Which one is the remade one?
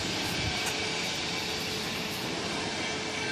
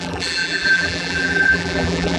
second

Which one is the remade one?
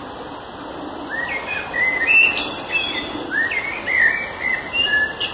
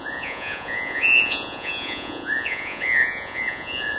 second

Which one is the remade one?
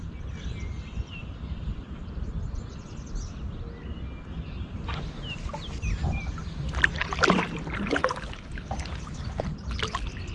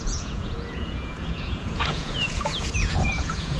second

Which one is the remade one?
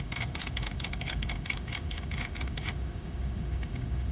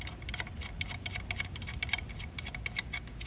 first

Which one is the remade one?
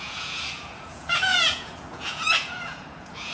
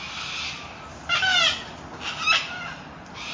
first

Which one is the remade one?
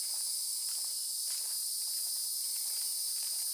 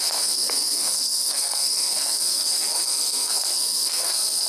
second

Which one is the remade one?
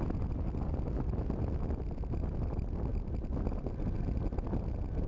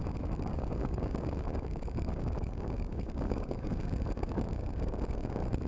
second